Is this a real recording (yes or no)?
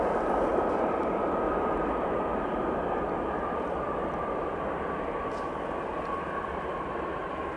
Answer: yes